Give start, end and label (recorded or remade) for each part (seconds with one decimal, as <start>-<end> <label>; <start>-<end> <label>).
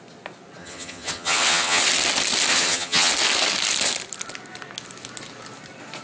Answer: 0.0-0.6 recorded; 0.6-1.8 remade; 1.8-2.5 recorded; 2.5-3.1 remade; 3.1-6.0 recorded